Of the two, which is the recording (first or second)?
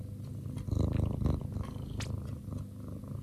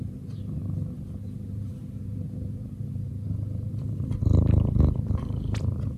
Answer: first